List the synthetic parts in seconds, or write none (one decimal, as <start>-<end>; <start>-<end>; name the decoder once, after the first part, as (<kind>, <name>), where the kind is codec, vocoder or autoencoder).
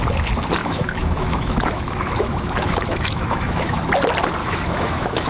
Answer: 0.6-3.8 (autoencoder, DAC-VAE); 4.4-5.3